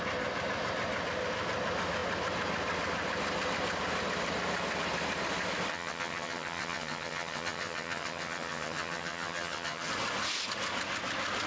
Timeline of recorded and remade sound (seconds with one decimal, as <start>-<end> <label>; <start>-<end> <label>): 0.0-5.7 recorded; 5.7-9.9 remade; 9.9-11.5 recorded